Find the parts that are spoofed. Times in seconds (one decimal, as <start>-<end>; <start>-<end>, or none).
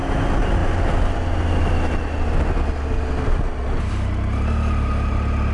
none